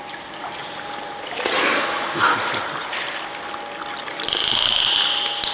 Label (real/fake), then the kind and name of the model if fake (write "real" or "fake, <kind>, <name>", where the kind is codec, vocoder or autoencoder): real